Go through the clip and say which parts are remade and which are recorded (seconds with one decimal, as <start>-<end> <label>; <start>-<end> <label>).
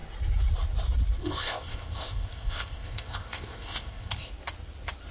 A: 0.0-1.2 recorded; 1.2-4.3 remade; 4.3-5.1 recorded